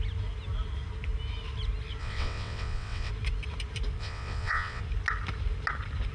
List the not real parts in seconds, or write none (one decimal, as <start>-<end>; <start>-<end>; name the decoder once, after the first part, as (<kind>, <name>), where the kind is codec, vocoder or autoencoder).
2.0-3.1 (vocoder, WaveNeXt); 4.0-4.8